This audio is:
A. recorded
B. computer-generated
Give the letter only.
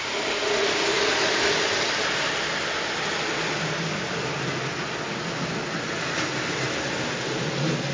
A